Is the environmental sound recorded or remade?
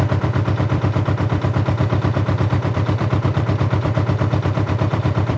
remade